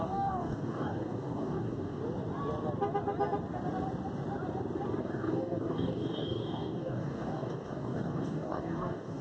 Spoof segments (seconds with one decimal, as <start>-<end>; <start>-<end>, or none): 0.0-2.0; 5.0-9.2